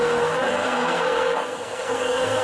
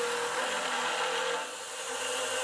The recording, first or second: second